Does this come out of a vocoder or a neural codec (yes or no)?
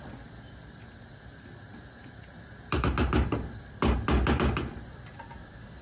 no